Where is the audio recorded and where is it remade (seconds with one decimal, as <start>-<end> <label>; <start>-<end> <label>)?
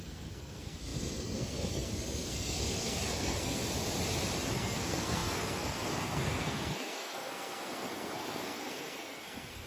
0.0-3.6 remade; 3.6-4.5 recorded; 4.5-9.7 remade